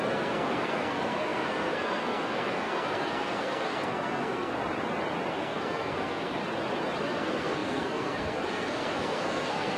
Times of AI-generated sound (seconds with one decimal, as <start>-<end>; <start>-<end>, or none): 0.0-4.6; 5.3-6.4; 7.0-9.8